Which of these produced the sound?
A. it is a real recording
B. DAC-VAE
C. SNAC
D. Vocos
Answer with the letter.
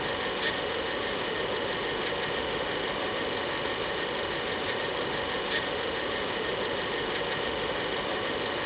A